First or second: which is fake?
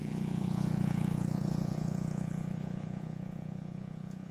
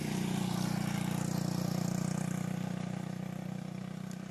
first